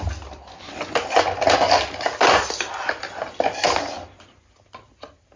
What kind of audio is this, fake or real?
real